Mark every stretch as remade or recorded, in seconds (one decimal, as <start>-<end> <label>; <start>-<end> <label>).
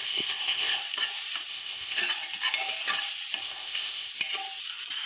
0.0-0.8 remade; 0.8-1.5 recorded; 1.5-2.0 remade; 2.0-3.4 recorded; 3.4-4.1 remade; 4.1-5.1 recorded